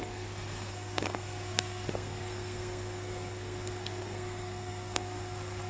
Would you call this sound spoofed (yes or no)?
yes